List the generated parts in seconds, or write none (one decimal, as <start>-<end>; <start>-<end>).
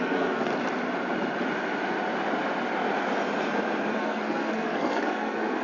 0.0-0.5; 3.9-5.6